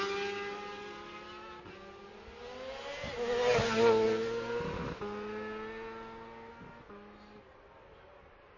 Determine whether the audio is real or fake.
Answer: real